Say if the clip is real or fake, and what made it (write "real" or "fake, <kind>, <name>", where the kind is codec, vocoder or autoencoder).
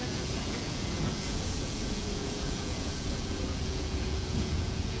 fake, vocoder, Vocos